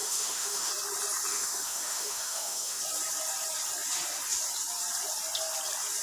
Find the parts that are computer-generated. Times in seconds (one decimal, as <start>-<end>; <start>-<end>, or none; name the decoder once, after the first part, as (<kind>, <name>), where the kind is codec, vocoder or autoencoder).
0.0-0.7 (autoencoder, DAC-VAE); 1.3-2.8